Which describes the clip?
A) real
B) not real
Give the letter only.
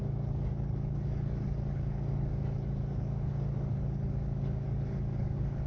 B